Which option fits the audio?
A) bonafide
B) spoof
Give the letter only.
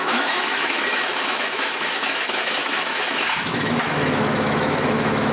B